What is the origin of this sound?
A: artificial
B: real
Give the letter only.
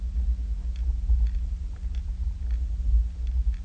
B